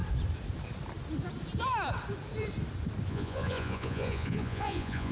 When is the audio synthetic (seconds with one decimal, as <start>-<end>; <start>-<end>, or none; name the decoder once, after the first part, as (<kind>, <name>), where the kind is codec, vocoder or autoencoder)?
3.1-5.1 (vocoder, Vocos)